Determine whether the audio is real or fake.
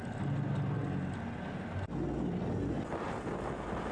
real